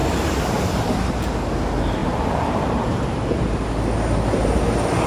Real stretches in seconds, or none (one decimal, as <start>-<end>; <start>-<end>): 1.2-2.0; 3.7-5.1